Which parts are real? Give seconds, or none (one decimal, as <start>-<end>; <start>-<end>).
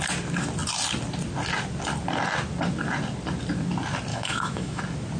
0.0-4.1; 4.8-5.2